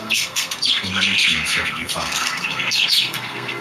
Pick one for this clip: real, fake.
fake